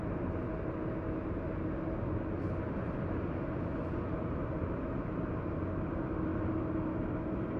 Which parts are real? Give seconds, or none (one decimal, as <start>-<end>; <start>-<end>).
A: 0.0-7.6